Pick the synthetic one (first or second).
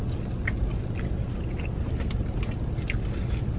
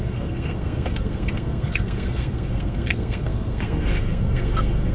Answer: second